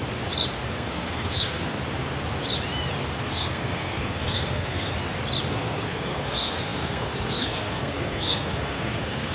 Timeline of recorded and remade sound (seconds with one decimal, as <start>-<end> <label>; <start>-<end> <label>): 0.0-0.7 recorded; 0.7-1.8 remade; 1.8-3.2 recorded; 3.2-4.9 remade; 4.9-5.5 recorded; 5.5-9.3 remade